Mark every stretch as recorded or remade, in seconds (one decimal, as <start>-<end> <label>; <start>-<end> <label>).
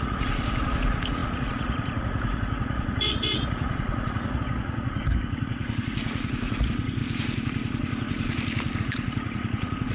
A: 0.0-7.0 remade; 7.0-8.8 recorded; 8.8-9.9 remade